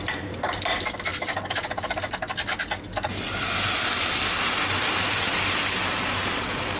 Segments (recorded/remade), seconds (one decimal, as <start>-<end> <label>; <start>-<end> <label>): 0.0-6.8 recorded